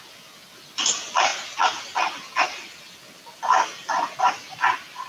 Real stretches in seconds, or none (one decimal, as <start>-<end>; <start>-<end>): 0.0-5.1